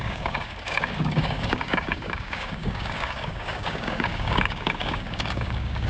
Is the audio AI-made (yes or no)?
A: yes